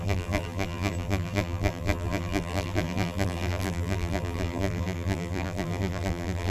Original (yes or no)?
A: no